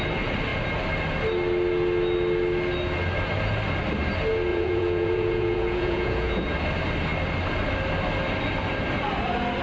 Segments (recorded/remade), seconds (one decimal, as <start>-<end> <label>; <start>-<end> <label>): 0.0-4.5 recorded; 4.5-6.4 remade; 6.4-9.6 recorded